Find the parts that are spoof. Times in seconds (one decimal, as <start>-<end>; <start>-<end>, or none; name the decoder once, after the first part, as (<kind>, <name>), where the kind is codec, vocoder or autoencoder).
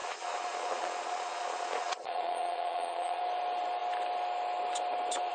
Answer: 0.0-3.2 (vocoder, Vocos)